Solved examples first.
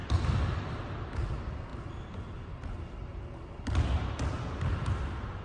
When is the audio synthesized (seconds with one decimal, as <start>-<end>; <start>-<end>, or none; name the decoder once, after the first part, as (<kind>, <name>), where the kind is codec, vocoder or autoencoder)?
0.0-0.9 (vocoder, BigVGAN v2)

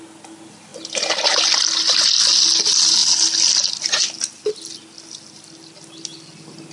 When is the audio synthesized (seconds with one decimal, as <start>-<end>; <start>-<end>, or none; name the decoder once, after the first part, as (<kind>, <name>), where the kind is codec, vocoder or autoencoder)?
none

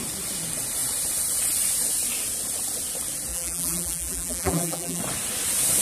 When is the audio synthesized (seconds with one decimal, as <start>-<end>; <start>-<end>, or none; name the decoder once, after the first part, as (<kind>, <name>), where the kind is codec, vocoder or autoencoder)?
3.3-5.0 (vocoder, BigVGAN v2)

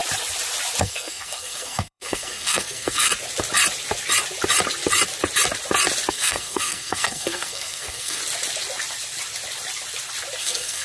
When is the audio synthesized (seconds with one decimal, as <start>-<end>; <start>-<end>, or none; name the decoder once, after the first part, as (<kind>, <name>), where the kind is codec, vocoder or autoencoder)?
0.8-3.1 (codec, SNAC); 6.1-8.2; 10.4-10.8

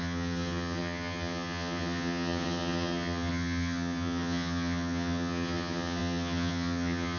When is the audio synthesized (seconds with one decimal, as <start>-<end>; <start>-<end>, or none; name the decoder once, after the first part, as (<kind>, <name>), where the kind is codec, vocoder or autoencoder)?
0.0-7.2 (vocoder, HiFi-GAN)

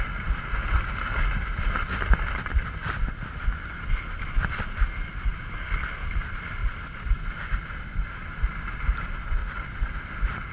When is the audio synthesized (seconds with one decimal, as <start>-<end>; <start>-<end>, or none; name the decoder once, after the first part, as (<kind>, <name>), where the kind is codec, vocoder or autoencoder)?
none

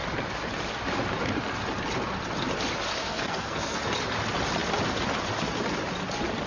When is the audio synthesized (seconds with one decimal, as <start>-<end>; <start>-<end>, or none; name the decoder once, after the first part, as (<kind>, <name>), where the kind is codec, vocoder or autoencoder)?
3.0-3.8 (codec, SNAC)